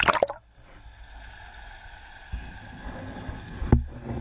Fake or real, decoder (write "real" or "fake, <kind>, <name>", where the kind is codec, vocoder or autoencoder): real